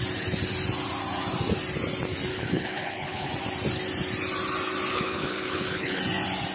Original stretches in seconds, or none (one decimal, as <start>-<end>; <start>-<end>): 0.0-2.3; 3.3-4.9; 6.0-6.5